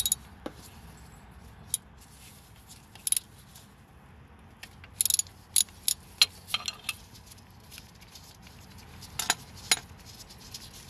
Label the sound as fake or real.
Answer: real